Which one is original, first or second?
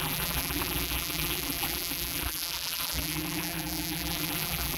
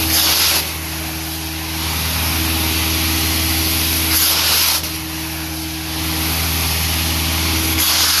second